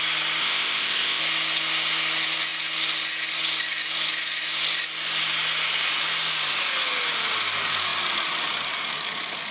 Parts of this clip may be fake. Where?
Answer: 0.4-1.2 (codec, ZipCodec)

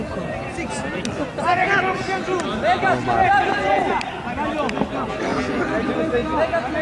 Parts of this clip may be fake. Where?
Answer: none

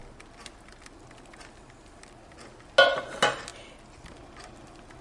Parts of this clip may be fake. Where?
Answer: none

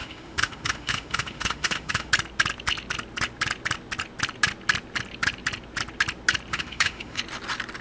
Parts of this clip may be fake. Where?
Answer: 0.0-2.1 (autoencoder, DAC-VAE); 6.5-7.2

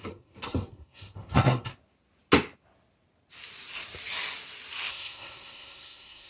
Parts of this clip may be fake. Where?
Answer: 0.0-1.7 (codec, SNAC); 4.9-6.3

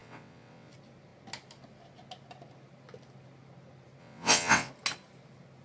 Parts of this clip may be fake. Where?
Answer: 0.0-0.7 (vocoder, WaveNeXt); 4.0-4.7